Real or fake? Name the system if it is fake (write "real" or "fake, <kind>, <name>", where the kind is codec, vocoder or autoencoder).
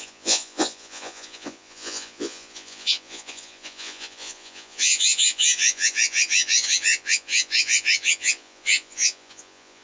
fake, vocoder, Vocos